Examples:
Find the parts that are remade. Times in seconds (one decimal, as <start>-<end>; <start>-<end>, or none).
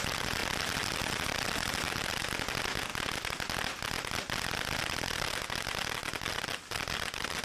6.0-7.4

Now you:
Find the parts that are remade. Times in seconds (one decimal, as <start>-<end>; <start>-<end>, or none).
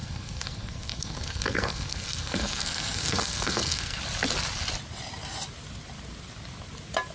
0.0-4.0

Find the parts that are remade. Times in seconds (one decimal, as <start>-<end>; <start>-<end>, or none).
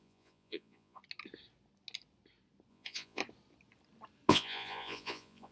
0.0-1.0; 2.7-3.2; 4.3-5.5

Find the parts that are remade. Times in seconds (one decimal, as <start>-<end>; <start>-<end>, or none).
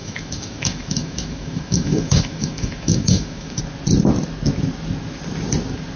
0.0-3.6